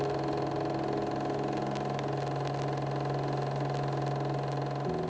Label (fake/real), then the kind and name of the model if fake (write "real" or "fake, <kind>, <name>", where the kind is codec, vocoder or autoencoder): real